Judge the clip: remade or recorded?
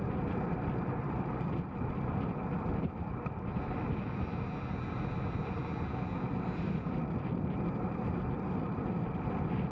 recorded